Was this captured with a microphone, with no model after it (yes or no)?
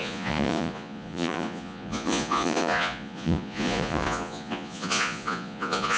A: no